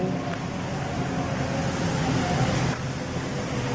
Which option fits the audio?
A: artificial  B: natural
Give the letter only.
B